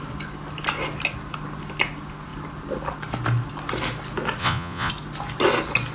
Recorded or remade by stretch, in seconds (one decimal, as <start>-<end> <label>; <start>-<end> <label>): 0.0-4.4 recorded; 4.4-4.9 remade; 4.9-5.9 recorded